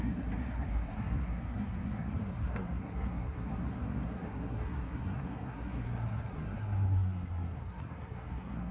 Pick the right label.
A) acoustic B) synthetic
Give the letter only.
B